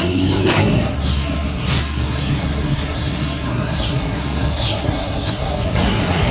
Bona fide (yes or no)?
no